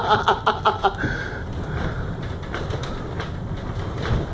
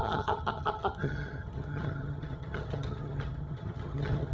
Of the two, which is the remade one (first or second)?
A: second